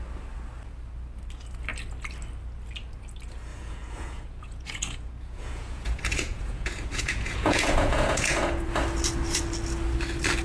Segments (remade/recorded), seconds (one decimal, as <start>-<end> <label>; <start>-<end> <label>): 0.0-3.5 recorded; 3.5-8.7 remade; 8.7-10.4 recorded